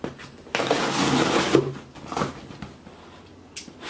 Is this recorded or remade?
recorded